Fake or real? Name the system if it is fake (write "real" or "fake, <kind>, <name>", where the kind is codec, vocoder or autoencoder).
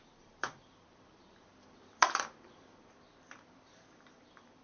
fake, vocoder, BigVGAN v2